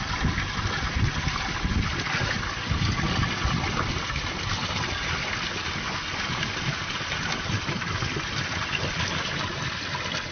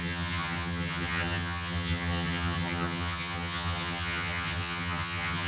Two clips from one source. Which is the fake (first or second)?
second